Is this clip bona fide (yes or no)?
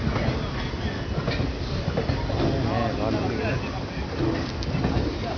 yes